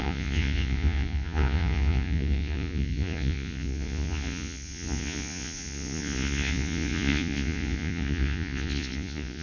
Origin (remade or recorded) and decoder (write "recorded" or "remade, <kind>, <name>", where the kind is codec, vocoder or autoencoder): remade, vocoder, Vocos